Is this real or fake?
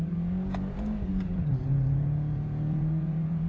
fake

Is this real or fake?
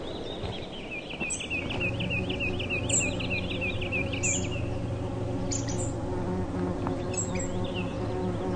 real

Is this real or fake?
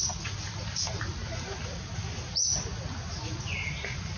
real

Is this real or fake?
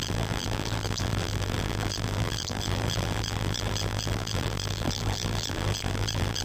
fake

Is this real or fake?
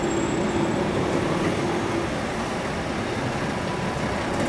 real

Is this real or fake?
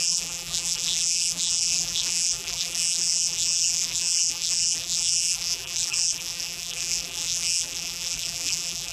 fake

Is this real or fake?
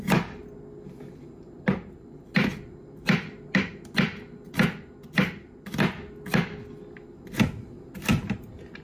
real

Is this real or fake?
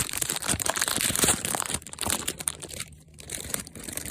fake